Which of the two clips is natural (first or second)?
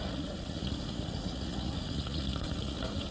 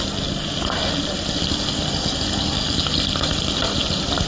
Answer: second